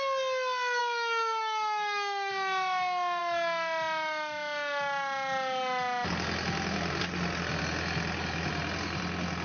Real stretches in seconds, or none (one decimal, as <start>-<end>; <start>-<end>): 0.0-0.8; 2.3-9.4